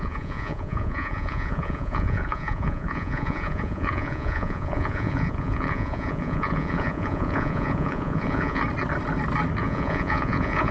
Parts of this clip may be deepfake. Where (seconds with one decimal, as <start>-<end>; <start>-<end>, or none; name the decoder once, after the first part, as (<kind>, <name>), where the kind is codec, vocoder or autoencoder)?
0.0-8.6 (vocoder, Vocos); 9.6-10.7